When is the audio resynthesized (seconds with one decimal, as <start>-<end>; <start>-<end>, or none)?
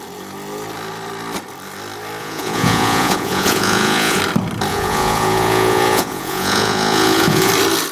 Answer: 2.2-4.2; 4.7-7.5